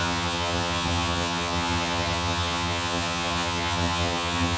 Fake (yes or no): yes